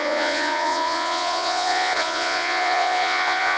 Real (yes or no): no